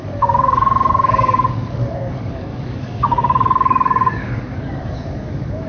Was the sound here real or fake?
fake